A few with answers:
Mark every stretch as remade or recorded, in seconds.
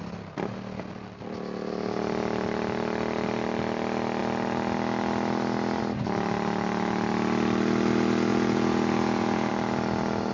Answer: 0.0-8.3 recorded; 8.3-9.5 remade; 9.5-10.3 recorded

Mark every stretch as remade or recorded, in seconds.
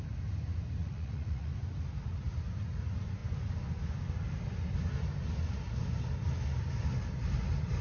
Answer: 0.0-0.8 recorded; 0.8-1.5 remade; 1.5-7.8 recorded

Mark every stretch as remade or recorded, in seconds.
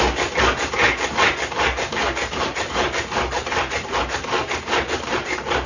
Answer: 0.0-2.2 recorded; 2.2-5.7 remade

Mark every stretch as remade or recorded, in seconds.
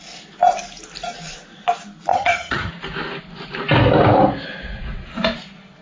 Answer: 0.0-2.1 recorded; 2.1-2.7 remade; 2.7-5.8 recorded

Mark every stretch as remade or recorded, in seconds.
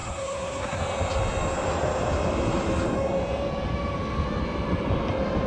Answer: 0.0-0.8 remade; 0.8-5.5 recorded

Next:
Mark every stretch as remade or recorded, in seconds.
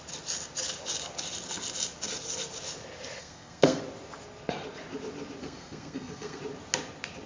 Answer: 0.0-3.2 recorded; 3.2-3.8 remade; 3.8-5.4 recorded; 5.4-6.4 remade; 6.4-7.3 recorded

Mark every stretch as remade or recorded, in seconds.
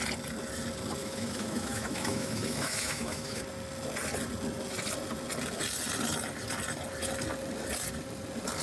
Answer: 0.0-1.0 recorded; 1.0-3.4 remade; 3.4-8.6 recorded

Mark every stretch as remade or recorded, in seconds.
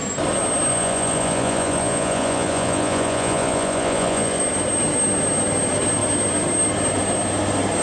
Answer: 0.0-0.7 recorded; 0.7-4.4 remade; 4.4-7.8 recorded